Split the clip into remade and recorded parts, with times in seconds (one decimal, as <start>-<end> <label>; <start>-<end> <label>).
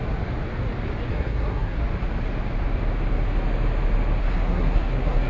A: 0.0-1.1 recorded; 1.1-1.8 remade; 1.8-4.2 recorded; 4.2-5.3 remade